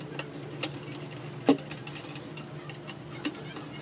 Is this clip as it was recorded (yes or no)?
yes